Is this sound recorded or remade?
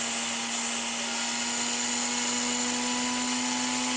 recorded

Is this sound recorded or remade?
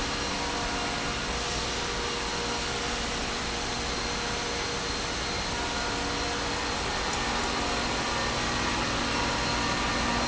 recorded